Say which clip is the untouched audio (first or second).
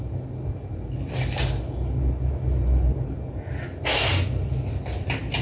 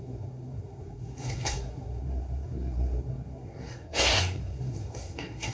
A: first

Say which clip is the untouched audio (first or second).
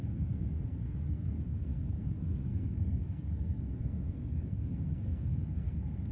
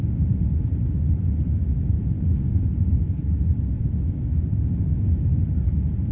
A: second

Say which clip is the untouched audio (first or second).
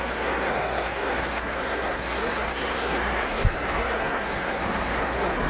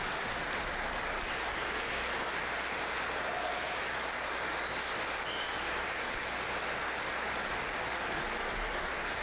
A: second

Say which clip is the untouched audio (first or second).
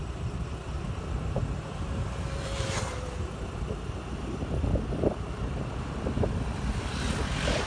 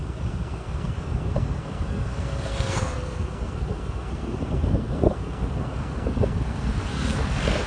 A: first